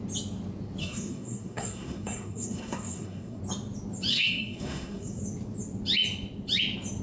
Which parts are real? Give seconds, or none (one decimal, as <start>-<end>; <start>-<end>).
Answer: 0.0-0.8; 3.4-4.1; 5.2-7.0

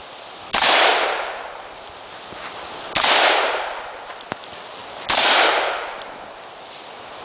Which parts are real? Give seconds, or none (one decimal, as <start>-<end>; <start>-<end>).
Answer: 0.0-7.2

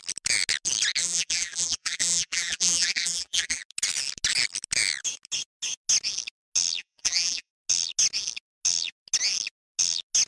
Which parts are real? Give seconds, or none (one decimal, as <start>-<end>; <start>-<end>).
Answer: 0.0-1.0; 3.6-6.8; 7.5-10.3

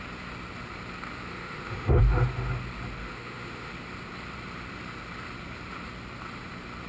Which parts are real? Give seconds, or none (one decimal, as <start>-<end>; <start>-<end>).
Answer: 0.0-1.3; 2.0-3.0; 3.7-6.9